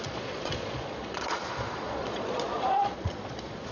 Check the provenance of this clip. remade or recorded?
remade